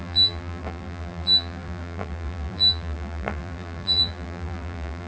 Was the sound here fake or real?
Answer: fake